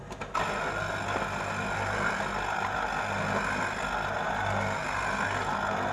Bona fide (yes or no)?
yes